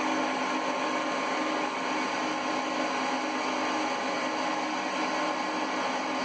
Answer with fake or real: real